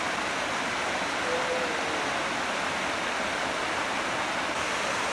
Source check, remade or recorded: recorded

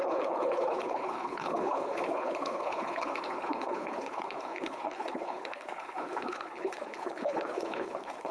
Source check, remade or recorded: remade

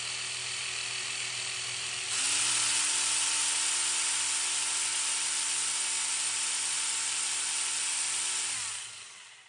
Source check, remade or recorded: recorded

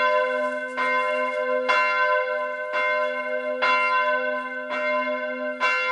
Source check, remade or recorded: recorded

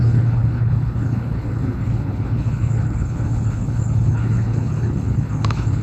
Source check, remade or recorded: remade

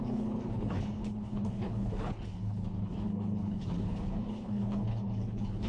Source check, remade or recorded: remade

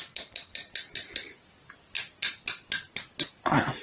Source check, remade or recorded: recorded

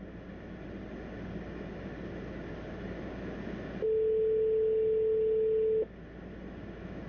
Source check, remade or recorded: recorded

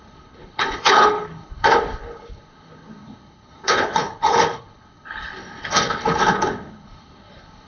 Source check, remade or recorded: remade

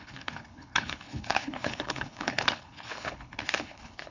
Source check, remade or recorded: remade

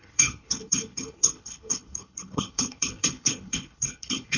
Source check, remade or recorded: remade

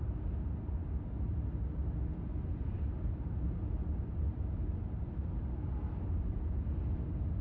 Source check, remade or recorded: recorded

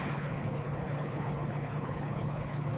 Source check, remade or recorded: remade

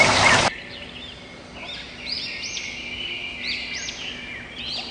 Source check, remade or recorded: recorded